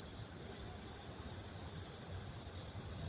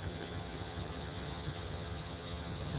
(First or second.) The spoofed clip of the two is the second